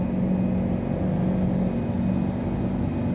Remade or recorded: recorded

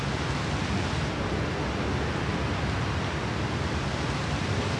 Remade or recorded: recorded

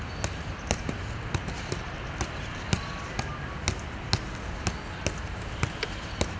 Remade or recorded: recorded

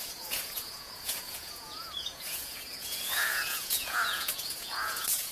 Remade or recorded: remade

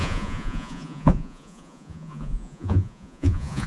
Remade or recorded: remade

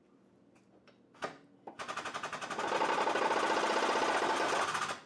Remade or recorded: recorded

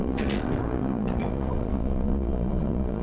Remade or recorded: remade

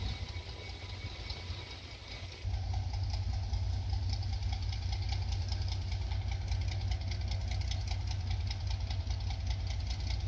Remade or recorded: recorded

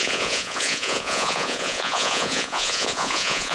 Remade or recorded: remade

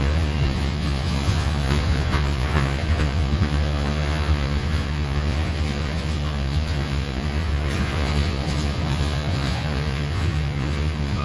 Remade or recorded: remade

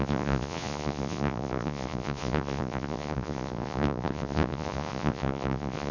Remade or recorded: remade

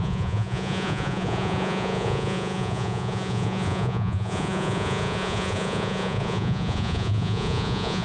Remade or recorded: remade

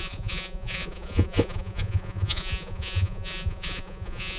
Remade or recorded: remade